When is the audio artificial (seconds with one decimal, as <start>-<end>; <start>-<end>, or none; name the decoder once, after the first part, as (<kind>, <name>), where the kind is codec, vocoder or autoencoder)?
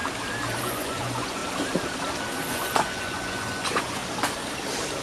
0.6-1.4 (vocoder, Vocos); 2.5-4.0